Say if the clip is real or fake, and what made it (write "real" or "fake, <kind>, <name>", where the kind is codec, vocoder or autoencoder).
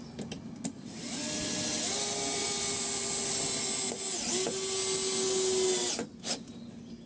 real